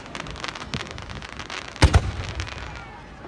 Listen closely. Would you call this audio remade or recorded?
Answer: recorded